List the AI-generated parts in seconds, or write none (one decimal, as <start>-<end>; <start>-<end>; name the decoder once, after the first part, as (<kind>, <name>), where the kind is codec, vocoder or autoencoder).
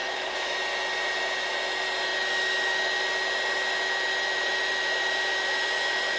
0.0-0.6 (autoencoder, DAC-VAE)